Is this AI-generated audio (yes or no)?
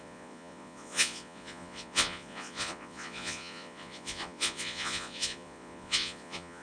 yes